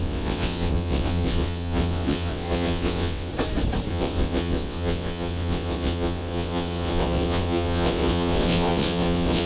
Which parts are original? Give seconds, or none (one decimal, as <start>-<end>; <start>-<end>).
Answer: 3.3-3.9